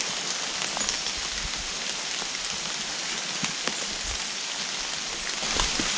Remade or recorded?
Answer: recorded